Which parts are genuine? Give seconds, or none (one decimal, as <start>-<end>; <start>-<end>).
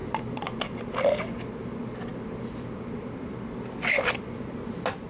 0.0-5.1